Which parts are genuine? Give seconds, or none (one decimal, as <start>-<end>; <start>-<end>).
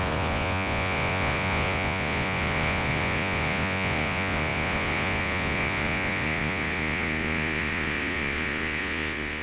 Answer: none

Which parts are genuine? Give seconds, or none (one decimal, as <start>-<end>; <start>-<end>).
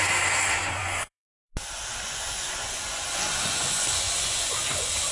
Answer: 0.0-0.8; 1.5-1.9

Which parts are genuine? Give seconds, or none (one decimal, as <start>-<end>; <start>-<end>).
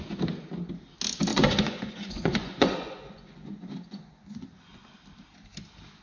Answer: 0.0-1.3; 4.9-6.0